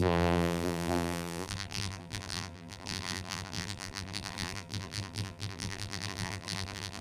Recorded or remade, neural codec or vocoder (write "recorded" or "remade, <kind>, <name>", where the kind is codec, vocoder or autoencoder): remade, vocoder, BigVGAN v2